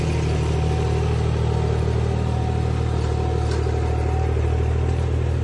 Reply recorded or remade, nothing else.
recorded